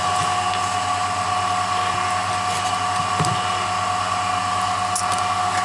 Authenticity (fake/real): real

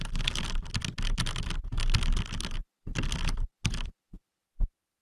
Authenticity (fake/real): real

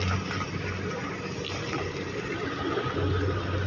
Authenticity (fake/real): real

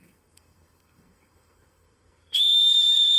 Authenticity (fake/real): fake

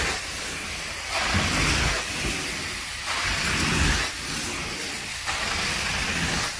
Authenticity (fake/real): real